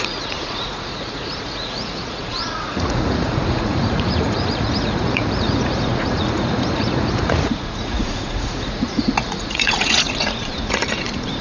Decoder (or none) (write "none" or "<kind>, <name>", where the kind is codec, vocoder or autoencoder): vocoder, Vocos